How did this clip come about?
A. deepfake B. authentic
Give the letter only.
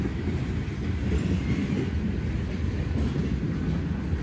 B